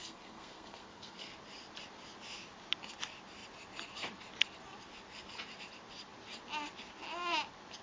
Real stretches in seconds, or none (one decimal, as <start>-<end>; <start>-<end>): 1.3-7.8